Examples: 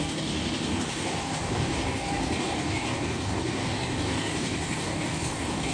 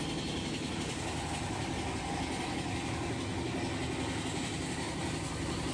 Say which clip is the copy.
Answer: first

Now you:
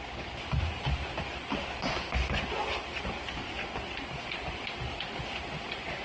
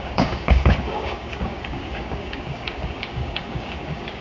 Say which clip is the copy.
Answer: second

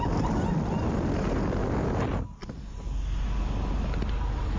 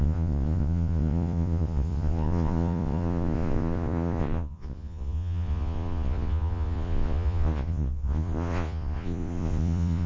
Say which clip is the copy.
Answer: second